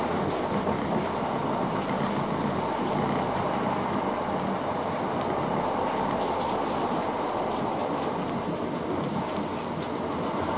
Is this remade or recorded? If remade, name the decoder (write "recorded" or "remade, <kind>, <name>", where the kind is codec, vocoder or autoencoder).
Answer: recorded